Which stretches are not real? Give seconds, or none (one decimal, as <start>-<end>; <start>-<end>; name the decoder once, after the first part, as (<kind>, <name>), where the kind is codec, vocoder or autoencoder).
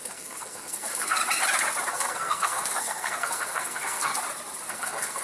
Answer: 0.0-1.2 (codec, SNAC); 1.9-4.1; 4.7-5.2